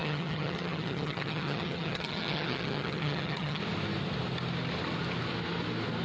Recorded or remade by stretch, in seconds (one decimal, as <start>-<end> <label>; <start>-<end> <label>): 0.0-3.6 remade; 3.6-6.0 recorded